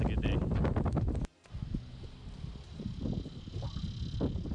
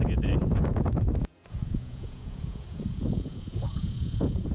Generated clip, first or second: second